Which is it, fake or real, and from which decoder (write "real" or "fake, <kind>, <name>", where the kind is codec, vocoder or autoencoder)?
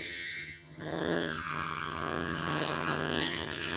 fake, vocoder, HiFi-GAN